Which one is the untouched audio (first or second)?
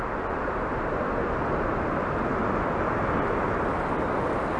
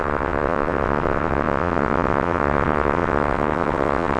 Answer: first